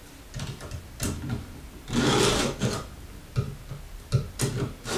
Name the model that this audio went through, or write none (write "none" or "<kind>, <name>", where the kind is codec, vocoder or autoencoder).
none